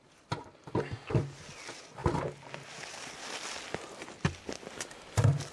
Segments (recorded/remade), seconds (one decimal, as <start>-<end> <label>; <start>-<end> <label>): 0.0-5.5 recorded